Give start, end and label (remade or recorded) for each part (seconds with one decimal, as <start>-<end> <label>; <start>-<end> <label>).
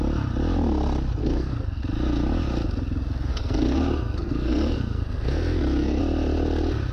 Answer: 0.0-1.2 recorded; 1.2-1.8 remade; 1.8-3.3 recorded; 3.3-6.0 remade; 6.0-6.9 recorded